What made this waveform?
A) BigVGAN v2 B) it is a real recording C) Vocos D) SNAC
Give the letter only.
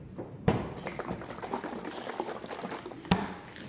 B